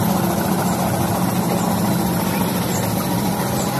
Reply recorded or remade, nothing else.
recorded